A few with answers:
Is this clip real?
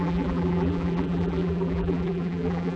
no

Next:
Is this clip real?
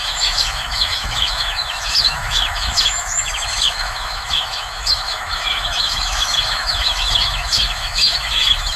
no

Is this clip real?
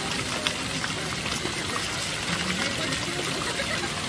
yes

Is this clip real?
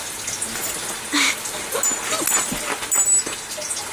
yes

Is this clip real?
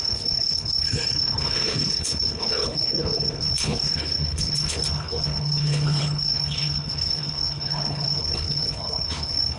no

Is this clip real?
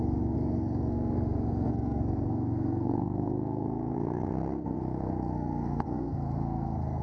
no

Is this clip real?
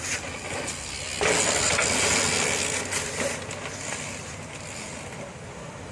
yes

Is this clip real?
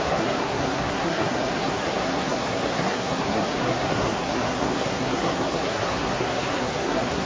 no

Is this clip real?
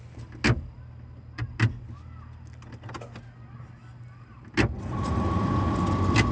yes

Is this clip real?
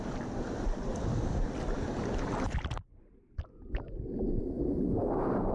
yes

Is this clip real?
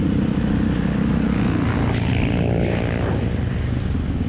yes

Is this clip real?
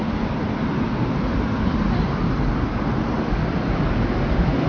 yes